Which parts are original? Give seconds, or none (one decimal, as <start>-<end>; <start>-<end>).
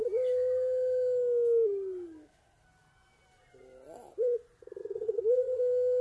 0.0-4.8; 5.6-6.0